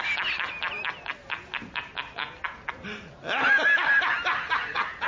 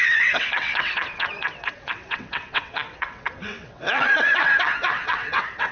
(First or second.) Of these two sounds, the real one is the first